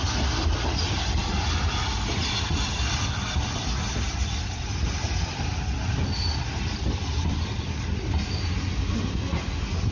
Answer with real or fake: real